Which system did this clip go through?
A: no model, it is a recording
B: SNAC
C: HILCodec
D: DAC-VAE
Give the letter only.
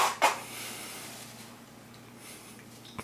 A